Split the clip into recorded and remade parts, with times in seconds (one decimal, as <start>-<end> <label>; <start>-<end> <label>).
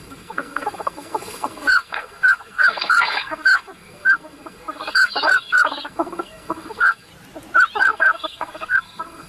0.0-7.1 remade; 7.1-7.8 recorded; 7.8-9.3 remade